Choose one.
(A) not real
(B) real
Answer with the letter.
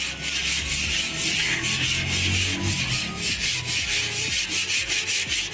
B